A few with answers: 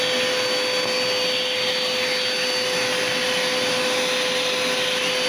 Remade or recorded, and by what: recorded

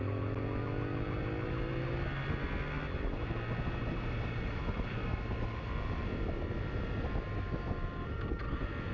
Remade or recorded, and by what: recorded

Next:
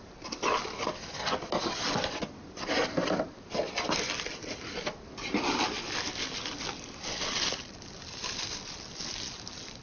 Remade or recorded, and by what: recorded